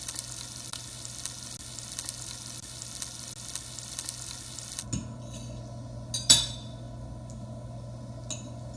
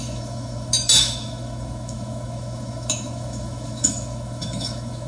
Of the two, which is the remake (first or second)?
second